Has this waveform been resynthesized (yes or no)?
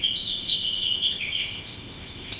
yes